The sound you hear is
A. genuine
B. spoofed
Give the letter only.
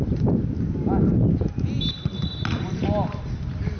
A